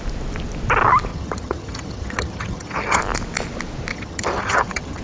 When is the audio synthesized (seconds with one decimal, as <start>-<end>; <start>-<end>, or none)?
1.1-3.0; 3.9-5.0